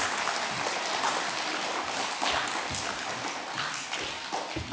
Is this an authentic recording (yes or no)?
yes